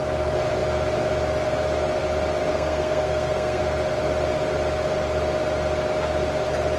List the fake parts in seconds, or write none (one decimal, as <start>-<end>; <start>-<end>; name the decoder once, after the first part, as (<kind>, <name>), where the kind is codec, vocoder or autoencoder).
2.5-3.6 (codec, SNAC)